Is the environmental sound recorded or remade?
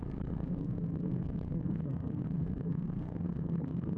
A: remade